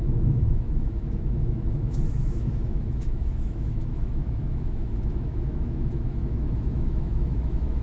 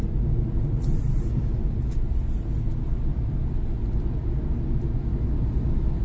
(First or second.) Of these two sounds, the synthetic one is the first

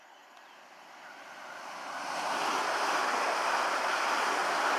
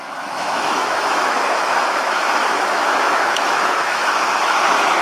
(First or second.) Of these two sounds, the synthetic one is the second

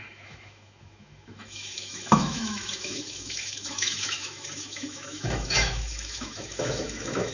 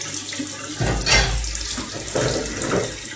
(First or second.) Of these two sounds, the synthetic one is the first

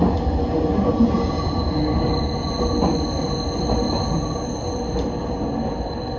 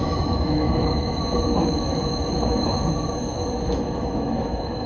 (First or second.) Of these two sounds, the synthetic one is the second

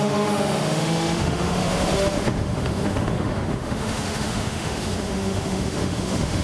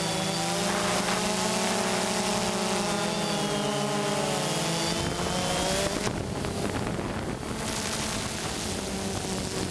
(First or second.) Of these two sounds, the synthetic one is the first